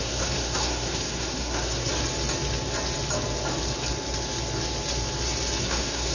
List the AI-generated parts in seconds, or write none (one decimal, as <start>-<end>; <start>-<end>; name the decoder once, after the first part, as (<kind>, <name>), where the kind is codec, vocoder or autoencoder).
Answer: 0.0-1.9 (codec, SNAC); 5.6-6.1